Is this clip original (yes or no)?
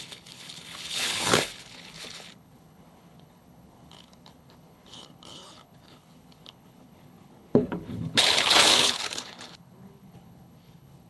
no